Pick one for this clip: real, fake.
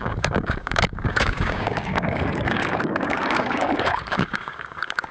fake